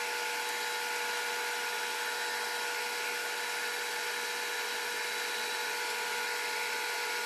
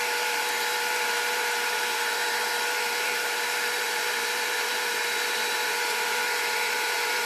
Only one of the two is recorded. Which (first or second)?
first